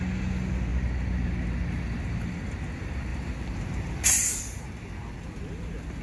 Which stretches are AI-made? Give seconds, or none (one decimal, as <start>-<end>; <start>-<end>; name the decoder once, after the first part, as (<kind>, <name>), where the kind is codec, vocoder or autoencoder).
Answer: none